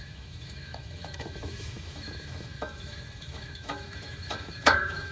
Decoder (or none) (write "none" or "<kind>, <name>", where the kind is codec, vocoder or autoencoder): autoencoder, DAC-VAE